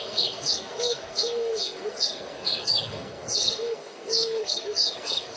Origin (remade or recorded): remade